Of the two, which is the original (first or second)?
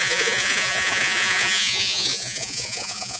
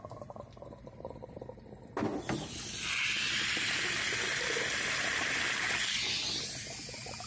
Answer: second